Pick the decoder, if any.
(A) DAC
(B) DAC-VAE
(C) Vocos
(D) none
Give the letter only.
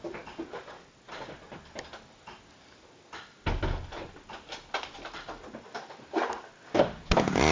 D